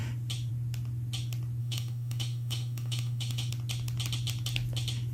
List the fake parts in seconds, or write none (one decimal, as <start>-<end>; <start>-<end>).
1.6-3.5